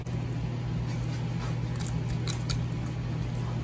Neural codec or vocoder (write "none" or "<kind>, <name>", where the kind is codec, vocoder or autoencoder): none